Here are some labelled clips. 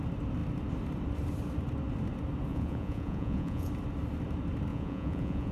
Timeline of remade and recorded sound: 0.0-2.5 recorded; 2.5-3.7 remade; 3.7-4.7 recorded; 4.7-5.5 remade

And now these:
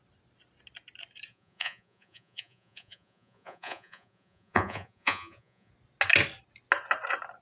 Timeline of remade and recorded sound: 0.0-1.3 recorded; 1.3-5.7 remade; 5.7-7.4 recorded

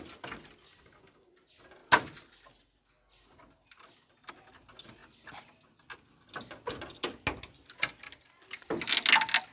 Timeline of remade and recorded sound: 0.0-9.5 recorded

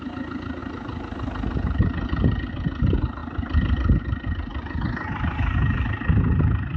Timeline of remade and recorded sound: 0.0-6.8 recorded

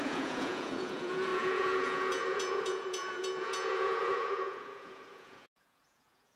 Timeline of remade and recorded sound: 0.0-6.4 remade

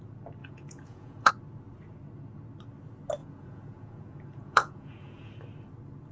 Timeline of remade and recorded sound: 0.0-0.4 recorded; 0.4-1.3 remade; 1.3-3.2 recorded; 3.2-5.3 remade; 5.3-6.1 recorded

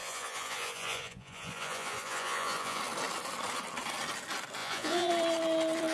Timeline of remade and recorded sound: 0.0-2.8 remade; 2.8-4.6 recorded; 4.6-5.1 remade; 5.1-5.9 recorded

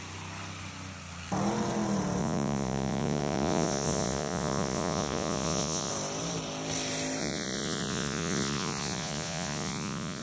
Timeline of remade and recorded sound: 0.0-2.2 recorded; 2.2-5.9 remade; 5.9-7.2 recorded; 7.2-10.2 remade